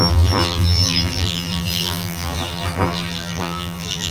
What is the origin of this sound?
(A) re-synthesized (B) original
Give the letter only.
A